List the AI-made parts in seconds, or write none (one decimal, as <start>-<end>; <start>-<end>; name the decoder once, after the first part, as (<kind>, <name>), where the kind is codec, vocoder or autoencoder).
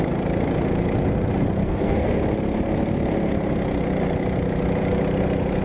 1.6-2.2 (codec, SNAC)